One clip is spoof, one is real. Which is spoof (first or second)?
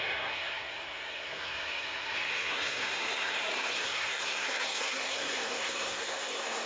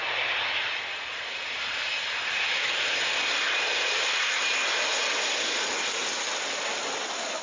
first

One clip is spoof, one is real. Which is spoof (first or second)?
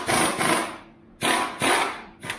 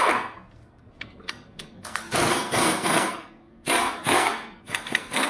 second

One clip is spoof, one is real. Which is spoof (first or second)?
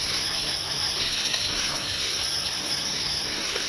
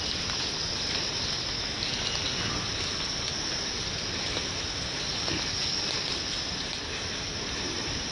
first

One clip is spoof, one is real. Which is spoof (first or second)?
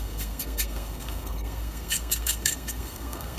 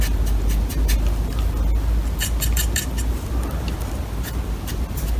first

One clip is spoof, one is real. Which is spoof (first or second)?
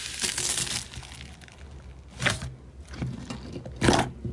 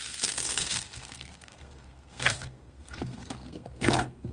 second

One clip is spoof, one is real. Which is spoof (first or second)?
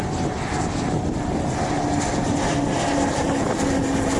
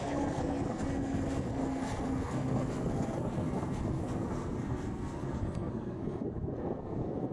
second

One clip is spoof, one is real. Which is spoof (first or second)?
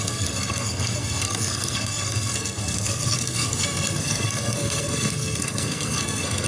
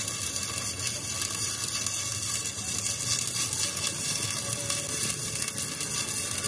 first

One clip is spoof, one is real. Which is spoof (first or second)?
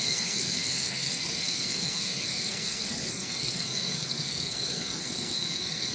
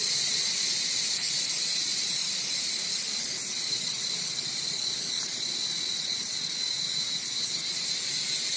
first